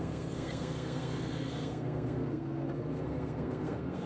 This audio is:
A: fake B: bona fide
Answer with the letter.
A